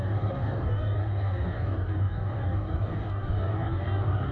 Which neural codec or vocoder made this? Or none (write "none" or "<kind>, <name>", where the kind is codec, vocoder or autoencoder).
codec, DAC